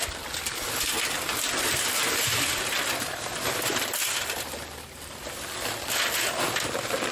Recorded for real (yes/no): yes